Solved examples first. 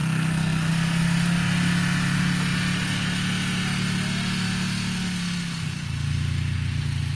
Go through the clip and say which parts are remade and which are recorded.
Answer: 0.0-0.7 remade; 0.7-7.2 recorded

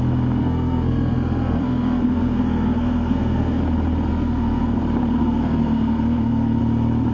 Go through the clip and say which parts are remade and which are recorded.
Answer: 0.0-0.4 recorded; 0.4-3.6 remade; 3.6-4.1 recorded; 4.1-4.8 remade; 4.8-5.2 recorded; 5.2-6.6 remade; 6.6-7.1 recorded

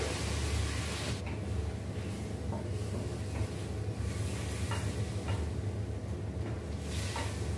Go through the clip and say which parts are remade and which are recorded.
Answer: 0.0-7.6 recorded

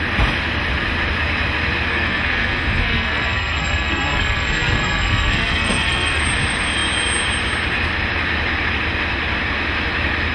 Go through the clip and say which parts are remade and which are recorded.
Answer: 0.0-1.9 recorded; 1.9-6.2 remade; 6.2-10.3 recorded

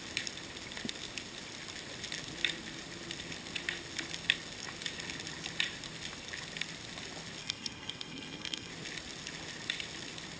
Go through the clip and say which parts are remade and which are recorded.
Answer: 0.0-7.4 recorded; 7.4-8.7 remade; 8.7-10.4 recorded

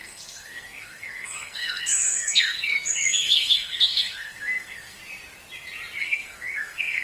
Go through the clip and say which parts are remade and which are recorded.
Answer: 0.0-5.0 remade; 5.0-6.0 recorded; 6.0-7.0 remade